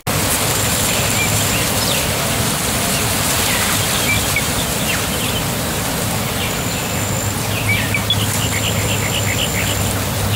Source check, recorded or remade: recorded